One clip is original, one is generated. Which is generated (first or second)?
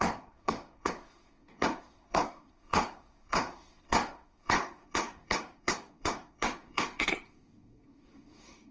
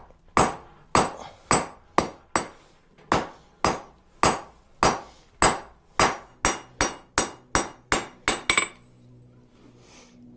first